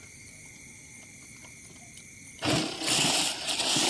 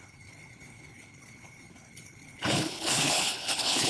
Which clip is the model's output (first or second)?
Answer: second